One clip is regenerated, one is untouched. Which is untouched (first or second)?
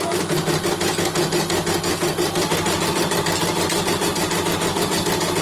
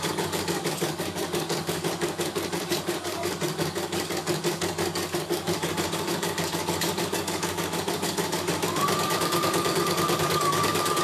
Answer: first